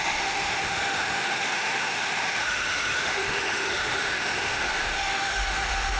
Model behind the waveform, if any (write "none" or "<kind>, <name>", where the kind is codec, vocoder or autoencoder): autoencoder, DAC-VAE